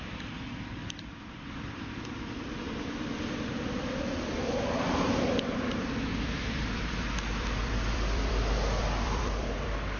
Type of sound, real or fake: fake